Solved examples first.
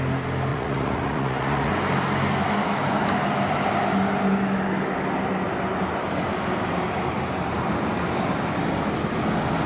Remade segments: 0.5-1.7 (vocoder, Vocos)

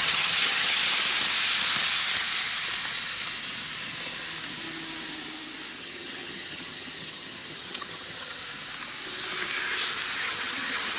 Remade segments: 0.0-0.8 (vocoder, HiFi-GAN); 5.8-8.4; 10.2-11.0

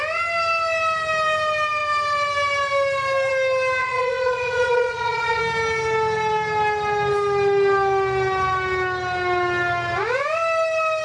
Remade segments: 3.8-5.4 (vocoder, Vocos)

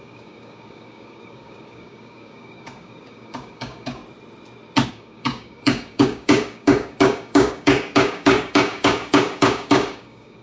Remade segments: 0.0-4.0 (codec, DAC); 4.9-10.4

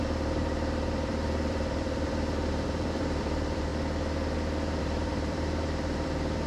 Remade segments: 0.0-3.7 (vocoder, BigVGAN v2); 4.8-6.5

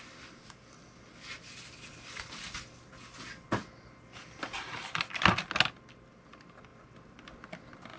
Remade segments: none

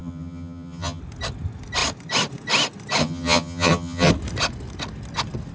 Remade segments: 0.0-1.0 (vocoder, HiFi-GAN); 3.0-4.1

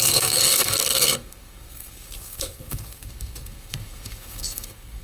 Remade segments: 0.0-5.0 (codec, SNAC)